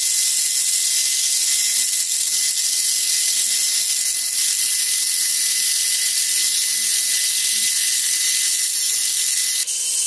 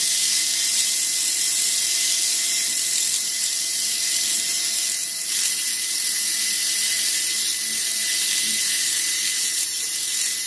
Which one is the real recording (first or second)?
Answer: first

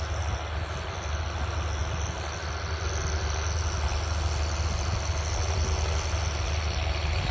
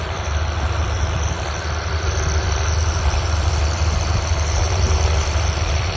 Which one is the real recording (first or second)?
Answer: first